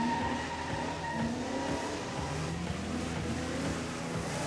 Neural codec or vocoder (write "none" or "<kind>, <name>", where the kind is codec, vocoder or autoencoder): none